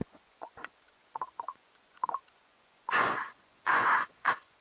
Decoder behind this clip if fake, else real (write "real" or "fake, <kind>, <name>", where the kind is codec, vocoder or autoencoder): fake, vocoder, Vocos